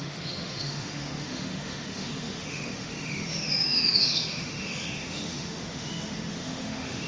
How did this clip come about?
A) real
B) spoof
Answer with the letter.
B